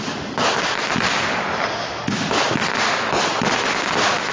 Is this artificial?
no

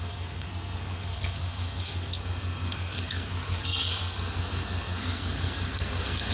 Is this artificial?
yes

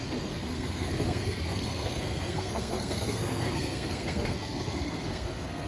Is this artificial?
yes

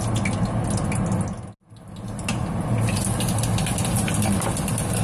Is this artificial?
no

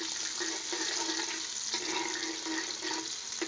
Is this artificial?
no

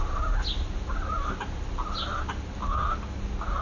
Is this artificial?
no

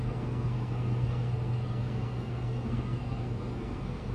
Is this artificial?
yes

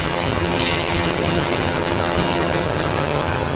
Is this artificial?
yes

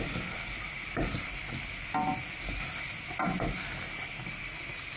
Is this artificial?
no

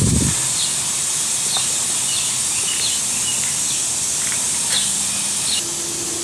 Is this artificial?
no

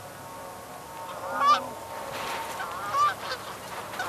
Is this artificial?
no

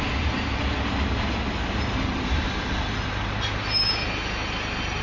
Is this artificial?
no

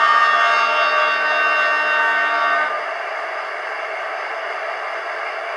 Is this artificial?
no